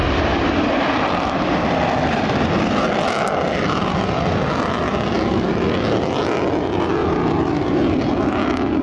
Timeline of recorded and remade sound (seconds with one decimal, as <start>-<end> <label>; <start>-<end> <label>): 0.0-3.1 remade; 3.1-8.8 recorded